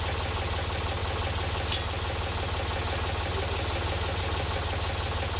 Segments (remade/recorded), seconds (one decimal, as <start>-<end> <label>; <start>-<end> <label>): 0.0-5.4 recorded